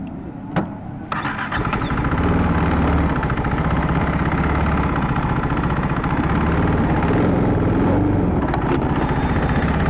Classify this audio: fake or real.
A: real